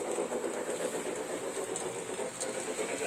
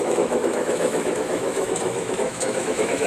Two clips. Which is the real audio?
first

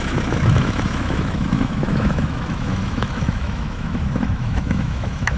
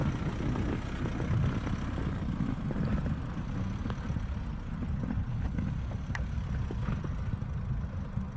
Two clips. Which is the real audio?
second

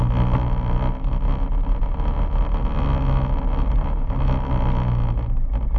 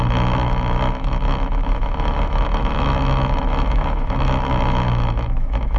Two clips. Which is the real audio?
first